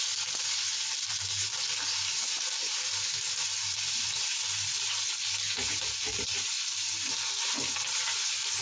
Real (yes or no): yes